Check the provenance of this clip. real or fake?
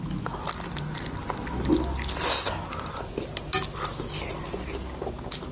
real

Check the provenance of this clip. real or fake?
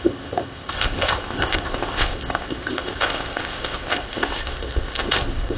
fake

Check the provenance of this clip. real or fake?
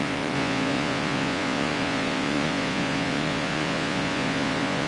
fake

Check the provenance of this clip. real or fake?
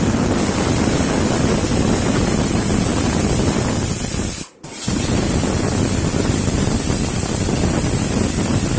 real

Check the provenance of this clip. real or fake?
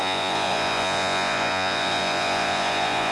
fake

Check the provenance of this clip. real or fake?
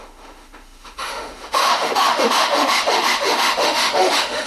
fake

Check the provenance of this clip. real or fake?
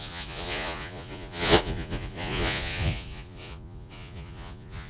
fake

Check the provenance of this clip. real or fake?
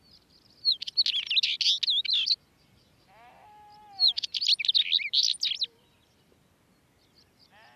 real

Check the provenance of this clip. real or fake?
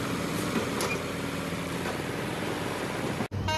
real